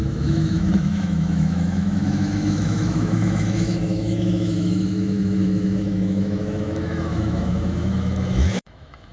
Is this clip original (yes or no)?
no